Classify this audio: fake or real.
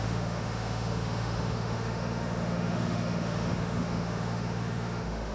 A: fake